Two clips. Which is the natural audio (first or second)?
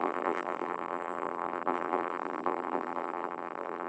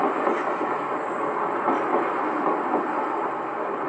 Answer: second